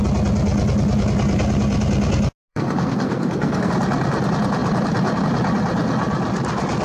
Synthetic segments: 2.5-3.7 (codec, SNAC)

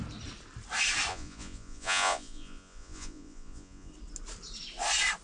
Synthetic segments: 1.1-3.9 (vocoder, Vocos)

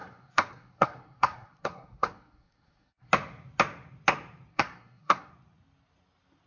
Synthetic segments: 0.0-3.1 (codec, SNAC); 4.5-5.3

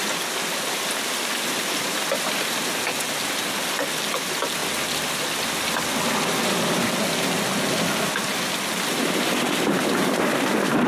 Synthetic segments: none